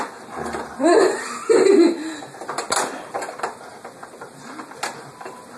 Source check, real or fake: real